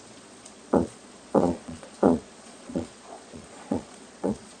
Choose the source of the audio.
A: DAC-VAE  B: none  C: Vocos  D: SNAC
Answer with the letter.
C